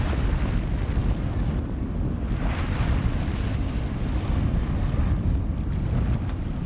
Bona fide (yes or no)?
yes